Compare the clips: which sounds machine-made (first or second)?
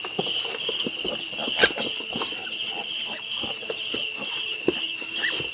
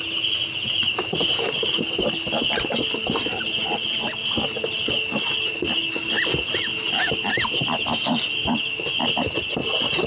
first